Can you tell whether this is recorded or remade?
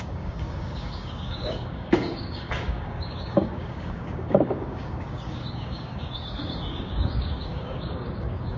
remade